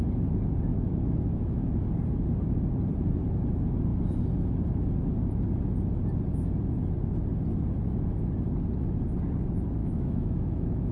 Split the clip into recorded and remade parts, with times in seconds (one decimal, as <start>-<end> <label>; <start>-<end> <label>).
0.0-0.7 recorded; 0.7-1.8 remade; 1.8-9.8 recorded; 9.8-10.9 remade